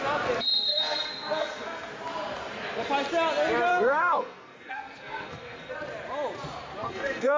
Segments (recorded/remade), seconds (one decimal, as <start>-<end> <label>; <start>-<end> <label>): 0.0-0.7 recorded; 0.7-1.9 remade; 1.9-3.7 recorded; 3.7-5.7 remade; 5.7-6.8 recorded; 6.8-7.4 remade